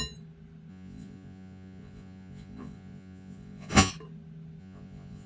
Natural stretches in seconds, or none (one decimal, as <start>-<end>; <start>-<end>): 0.0-0.7; 3.9-4.6